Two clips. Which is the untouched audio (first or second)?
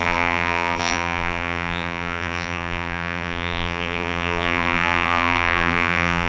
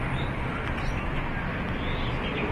second